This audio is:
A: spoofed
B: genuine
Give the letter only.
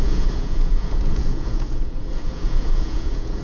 A